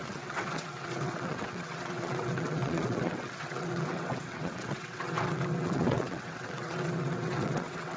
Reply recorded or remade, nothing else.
remade